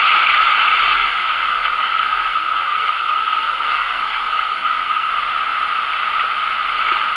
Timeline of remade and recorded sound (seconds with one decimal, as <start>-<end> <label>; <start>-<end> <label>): 0.0-0.9 recorded; 0.9-5.1 remade; 5.1-7.2 recorded